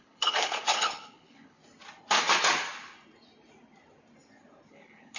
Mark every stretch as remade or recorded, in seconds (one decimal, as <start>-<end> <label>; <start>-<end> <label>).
0.0-1.6 remade; 1.6-4.7 recorded; 4.7-5.2 remade